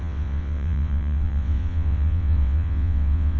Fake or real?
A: fake